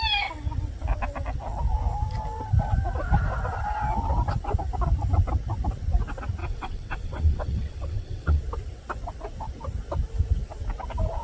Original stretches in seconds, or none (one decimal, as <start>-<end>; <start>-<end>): 0.0-6.4; 8.4-11.2